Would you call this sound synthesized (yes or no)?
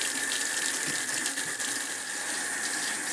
no